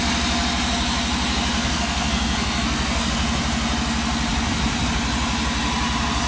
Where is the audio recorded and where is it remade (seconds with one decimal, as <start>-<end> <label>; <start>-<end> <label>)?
0.0-1.6 recorded; 1.6-3.1 remade; 3.1-6.3 recorded